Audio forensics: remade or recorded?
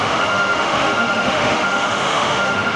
remade